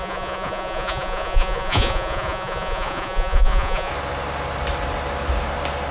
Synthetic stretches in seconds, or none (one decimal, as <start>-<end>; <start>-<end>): 0.0-3.9